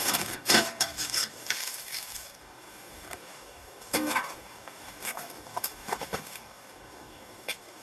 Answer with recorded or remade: remade